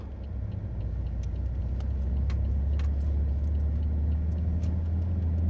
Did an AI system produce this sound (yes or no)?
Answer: no